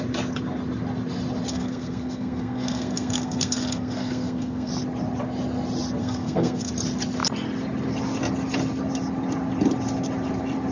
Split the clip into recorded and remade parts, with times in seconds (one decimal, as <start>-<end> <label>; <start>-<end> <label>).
0.0-1.5 recorded; 1.5-4.7 remade; 4.7-6.0 recorded; 6.0-6.7 remade; 6.7-10.7 recorded